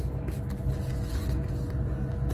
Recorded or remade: recorded